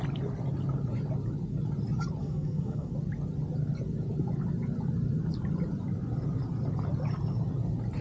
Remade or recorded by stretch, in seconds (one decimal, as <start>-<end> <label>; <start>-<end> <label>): 0.0-2.2 recorded; 2.2-2.9 remade; 2.9-8.0 recorded

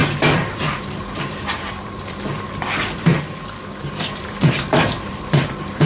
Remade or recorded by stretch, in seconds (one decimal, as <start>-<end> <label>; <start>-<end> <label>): 0.0-0.5 recorded; 0.5-3.1 remade; 3.1-4.1 recorded; 4.1-5.9 remade

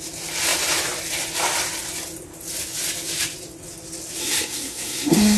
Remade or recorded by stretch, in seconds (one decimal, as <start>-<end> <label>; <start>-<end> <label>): 0.0-4.2 recorded; 4.2-5.4 remade

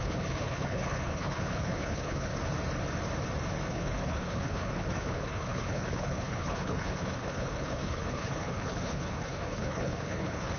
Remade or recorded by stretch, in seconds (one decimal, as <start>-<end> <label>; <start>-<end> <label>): 0.0-2.3 remade; 2.3-3.7 recorded; 3.7-10.6 remade